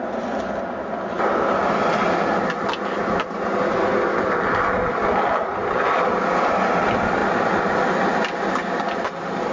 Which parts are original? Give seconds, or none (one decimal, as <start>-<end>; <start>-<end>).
0.0-9.5